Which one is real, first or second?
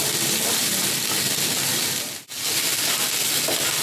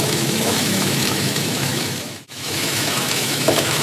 first